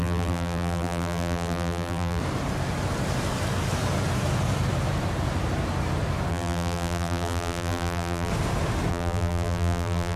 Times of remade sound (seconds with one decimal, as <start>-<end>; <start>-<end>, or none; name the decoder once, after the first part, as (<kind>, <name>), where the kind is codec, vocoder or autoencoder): 0.0-2.2 (vocoder, BigVGAN v2); 6.3-8.3; 8.9-10.2